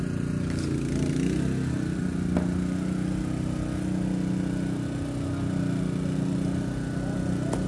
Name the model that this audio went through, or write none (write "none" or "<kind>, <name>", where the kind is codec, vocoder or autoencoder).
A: none